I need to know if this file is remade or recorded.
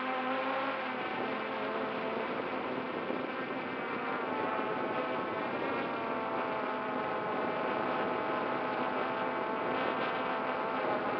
recorded